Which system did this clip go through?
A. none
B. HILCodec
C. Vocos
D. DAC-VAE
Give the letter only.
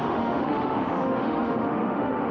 D